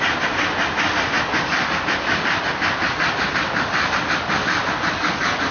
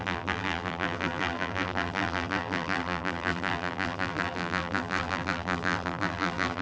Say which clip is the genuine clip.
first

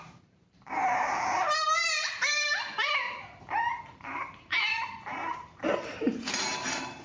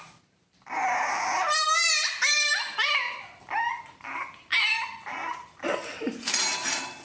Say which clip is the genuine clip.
second